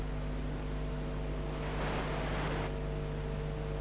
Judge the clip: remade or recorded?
recorded